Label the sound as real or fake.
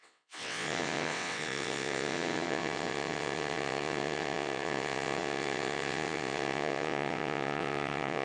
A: fake